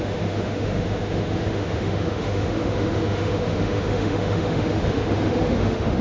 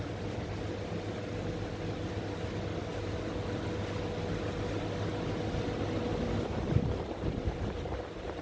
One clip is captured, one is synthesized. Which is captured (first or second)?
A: second